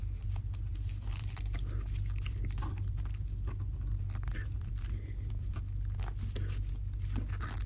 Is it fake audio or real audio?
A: real